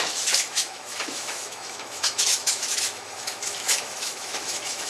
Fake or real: fake